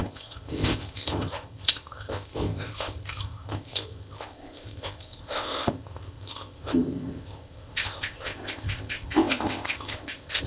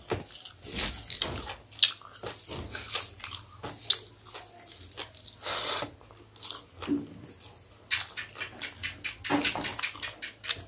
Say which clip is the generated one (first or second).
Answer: first